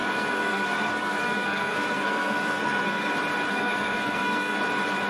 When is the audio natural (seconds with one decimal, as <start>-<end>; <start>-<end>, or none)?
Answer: 3.1-3.5; 4.6-5.1